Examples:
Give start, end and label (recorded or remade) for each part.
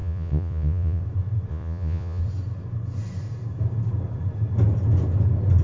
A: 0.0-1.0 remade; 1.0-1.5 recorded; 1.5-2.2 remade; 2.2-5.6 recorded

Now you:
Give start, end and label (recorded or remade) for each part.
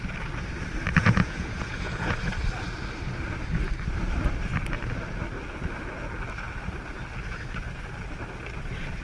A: 0.0-1.0 recorded; 1.0-2.2 remade; 2.2-9.0 recorded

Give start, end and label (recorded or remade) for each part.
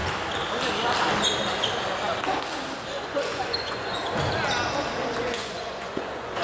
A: 0.0-2.9 recorded; 2.9-4.0 remade; 4.0-5.2 recorded; 5.2-6.4 remade